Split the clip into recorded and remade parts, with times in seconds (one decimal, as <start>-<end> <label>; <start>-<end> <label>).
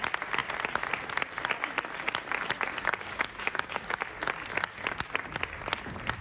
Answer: 0.0-2.7 recorded; 2.7-4.0 remade; 4.0-6.2 recorded